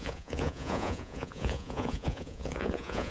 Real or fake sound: fake